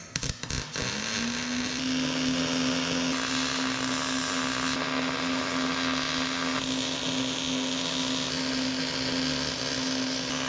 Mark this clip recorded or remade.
recorded